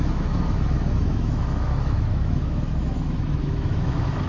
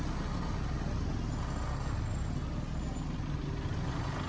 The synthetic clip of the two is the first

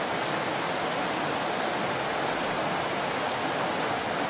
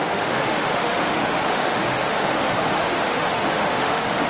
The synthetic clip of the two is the second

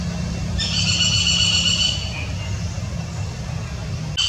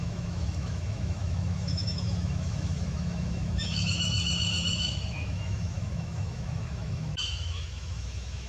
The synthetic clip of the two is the second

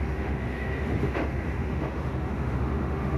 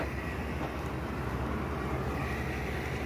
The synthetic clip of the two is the first